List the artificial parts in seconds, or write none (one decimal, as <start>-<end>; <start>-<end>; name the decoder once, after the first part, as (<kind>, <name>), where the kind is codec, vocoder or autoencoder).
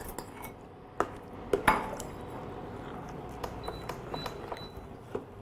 none